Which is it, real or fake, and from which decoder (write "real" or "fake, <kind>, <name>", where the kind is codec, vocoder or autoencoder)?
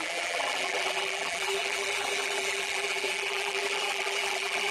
fake, vocoder, BigVGAN v2